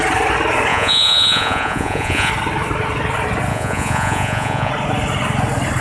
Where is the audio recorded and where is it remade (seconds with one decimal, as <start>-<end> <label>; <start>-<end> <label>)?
0.0-0.7 recorded; 0.7-2.3 remade; 2.3-3.5 recorded; 3.5-4.7 remade; 4.7-5.8 recorded